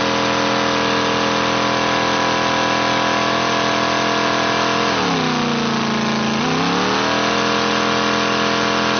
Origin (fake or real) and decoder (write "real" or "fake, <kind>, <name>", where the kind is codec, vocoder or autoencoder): real